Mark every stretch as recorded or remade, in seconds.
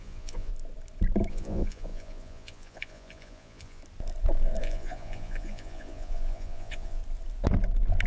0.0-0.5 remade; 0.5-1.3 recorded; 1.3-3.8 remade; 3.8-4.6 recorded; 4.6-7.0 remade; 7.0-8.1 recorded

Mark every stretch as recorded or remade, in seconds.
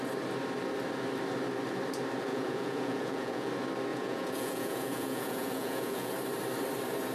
0.0-2.3 recorded; 2.3-3.5 remade; 3.5-3.9 recorded; 3.9-6.1 remade; 6.1-7.1 recorded